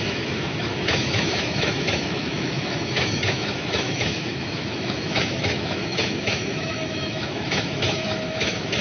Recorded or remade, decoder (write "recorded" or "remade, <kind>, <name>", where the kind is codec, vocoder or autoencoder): remade, autoencoder, DAC-VAE